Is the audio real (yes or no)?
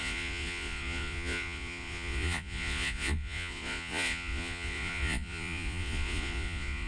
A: no